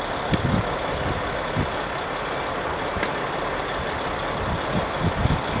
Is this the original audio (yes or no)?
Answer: yes